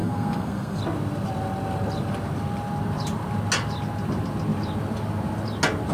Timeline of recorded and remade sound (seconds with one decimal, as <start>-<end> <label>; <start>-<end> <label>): 0.0-0.8 remade; 0.8-5.9 recorded